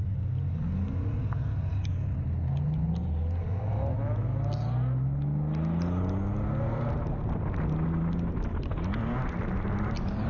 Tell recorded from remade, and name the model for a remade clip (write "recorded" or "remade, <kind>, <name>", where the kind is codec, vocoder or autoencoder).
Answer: recorded